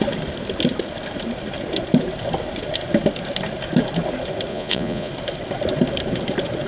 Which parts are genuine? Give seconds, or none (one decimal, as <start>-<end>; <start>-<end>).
0.0-4.5; 5.1-6.7